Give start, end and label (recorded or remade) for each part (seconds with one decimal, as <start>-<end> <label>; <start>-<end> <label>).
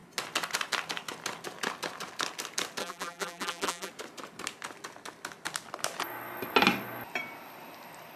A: 0.0-2.8 recorded; 2.8-3.9 remade; 3.9-8.2 recorded